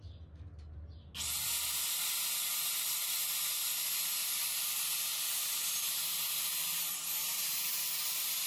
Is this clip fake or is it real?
real